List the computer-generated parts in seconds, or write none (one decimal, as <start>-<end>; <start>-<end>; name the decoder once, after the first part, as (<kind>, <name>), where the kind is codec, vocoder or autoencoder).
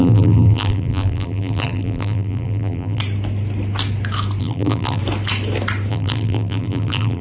0.0-3.0 (vocoder, BigVGAN v2); 4.4-5.0; 5.9-7.2